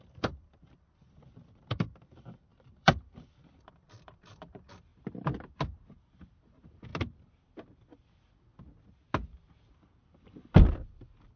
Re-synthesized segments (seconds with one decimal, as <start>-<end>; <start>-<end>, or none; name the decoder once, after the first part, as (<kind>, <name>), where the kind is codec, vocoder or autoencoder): 0.0-4.9 (vocoder, BigVGAN v2); 6.0-6.9; 7.8-8.5; 9.7-11.4